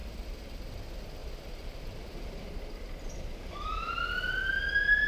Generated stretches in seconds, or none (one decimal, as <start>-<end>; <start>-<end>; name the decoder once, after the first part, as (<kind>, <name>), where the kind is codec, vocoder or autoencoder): 0.0-0.6 (vocoder, BigVGAN v2); 1.2-4.3